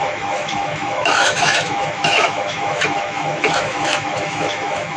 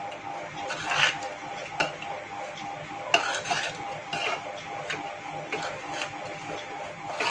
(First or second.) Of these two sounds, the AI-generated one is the first